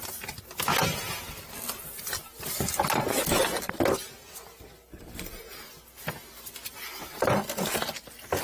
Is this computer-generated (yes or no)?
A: no